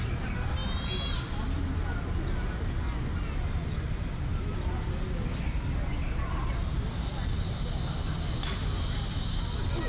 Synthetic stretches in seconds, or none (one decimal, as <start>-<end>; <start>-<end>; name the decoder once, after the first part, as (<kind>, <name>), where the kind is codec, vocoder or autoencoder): none